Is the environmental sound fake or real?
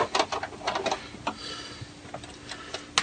real